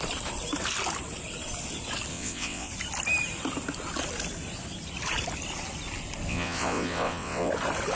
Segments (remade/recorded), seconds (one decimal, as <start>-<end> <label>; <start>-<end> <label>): 0.0-2.1 recorded; 2.1-2.7 remade; 2.7-6.3 recorded; 6.3-7.5 remade; 7.5-8.0 recorded